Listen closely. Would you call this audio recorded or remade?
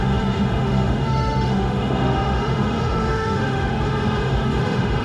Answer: remade